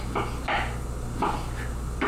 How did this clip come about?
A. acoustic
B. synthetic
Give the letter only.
A